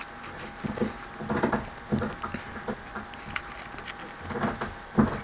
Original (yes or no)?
yes